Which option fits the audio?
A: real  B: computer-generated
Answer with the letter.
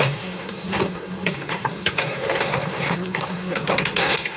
B